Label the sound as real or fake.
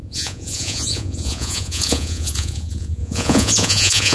fake